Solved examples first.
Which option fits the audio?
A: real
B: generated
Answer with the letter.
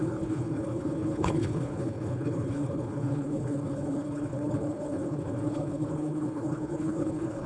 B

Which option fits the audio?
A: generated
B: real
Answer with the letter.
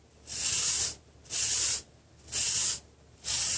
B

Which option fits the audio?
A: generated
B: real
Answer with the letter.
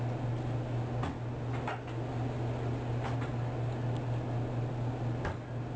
B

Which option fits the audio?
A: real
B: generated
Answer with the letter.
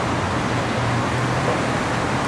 A